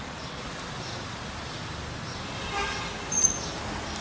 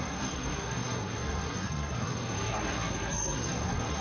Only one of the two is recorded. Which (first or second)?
first